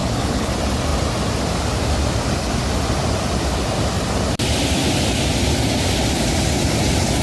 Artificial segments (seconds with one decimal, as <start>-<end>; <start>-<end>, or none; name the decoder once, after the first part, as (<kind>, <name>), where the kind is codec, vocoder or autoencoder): 0.0-0.5 (codec, HILCodec)